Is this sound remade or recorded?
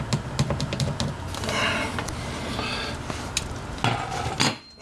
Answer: recorded